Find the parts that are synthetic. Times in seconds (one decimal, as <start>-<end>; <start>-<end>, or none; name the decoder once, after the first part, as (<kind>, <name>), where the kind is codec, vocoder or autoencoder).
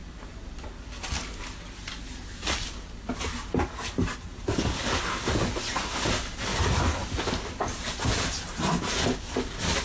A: 0.0-2.7 (vocoder, BigVGAN v2); 4.3-5.3; 6.5-9.3